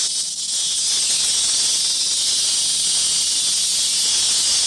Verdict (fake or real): real